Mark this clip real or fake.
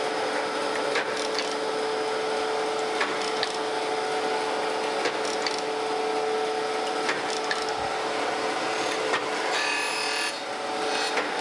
real